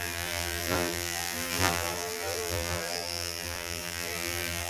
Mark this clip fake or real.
fake